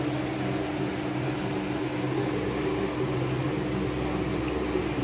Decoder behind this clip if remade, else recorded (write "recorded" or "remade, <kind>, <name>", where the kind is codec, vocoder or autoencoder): recorded